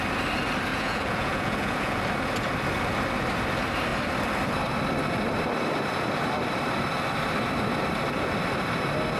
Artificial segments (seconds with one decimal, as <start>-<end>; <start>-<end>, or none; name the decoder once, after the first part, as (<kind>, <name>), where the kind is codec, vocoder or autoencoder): 0.7-2.0 (vocoder, Vocos)